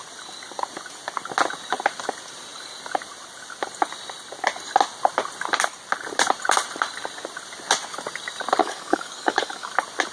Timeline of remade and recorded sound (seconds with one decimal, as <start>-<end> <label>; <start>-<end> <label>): 0.0-8.6 recorded; 8.6-9.7 remade; 9.7-10.1 recorded